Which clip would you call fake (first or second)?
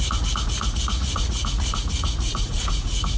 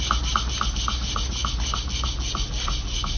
first